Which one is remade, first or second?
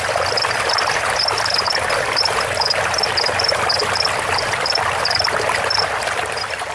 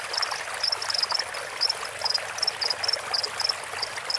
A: first